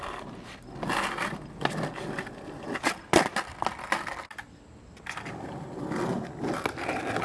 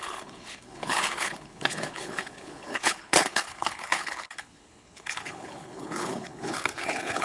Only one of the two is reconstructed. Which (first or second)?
second